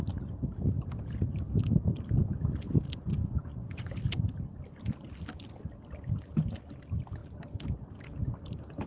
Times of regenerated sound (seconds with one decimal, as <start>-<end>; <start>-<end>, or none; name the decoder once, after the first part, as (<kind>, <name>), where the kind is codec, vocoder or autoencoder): 3.1-3.9 (vocoder, Vocos)